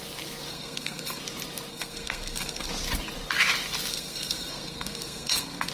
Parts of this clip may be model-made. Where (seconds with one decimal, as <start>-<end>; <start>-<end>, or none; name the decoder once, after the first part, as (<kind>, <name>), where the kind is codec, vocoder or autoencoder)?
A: 0.5-1.2 (codec, SNAC); 1.7-2.7; 3.9-5.7